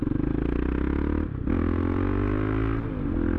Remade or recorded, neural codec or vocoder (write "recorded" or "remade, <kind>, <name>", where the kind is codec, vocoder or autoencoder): recorded